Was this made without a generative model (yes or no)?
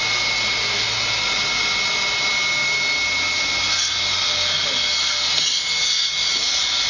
yes